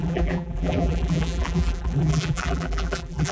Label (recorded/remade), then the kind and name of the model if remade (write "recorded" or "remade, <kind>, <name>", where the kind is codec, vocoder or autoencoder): remade, vocoder, BigVGAN v2